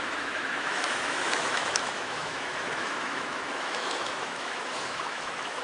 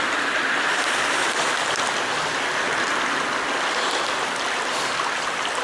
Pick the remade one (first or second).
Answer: first